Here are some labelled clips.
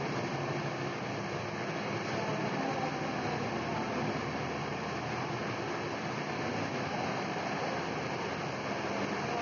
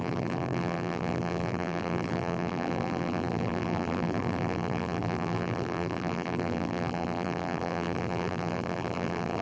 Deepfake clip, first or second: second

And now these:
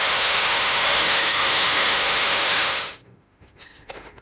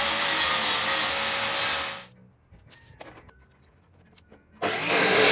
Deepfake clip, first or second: first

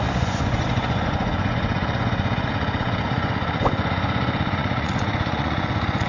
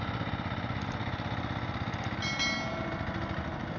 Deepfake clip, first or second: first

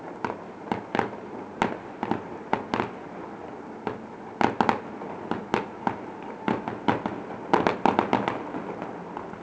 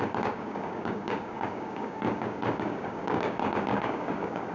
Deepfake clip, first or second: second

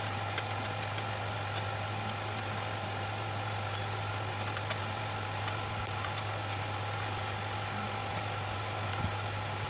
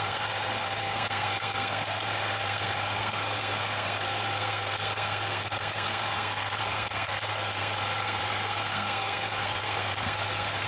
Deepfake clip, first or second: second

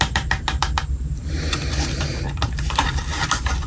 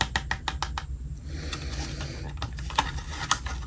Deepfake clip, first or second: first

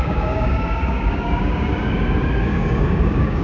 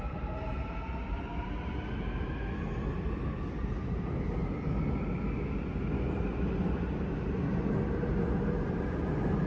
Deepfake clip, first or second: first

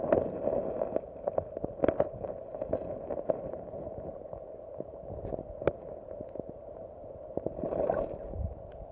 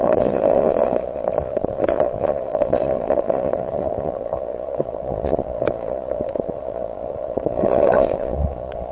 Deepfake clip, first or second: second